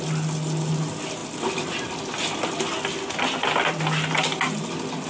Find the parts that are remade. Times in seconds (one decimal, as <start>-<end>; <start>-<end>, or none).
none